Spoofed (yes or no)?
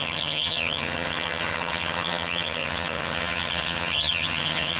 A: yes